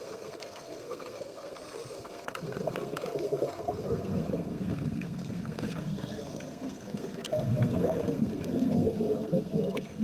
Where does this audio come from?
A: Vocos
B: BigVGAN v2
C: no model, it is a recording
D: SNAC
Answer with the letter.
D